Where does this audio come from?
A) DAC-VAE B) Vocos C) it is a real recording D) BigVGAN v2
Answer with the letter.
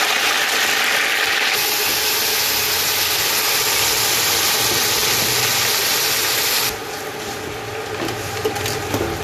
C